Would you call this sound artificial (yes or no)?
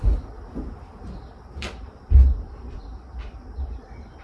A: no